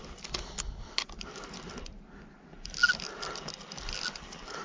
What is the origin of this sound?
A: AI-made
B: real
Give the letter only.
B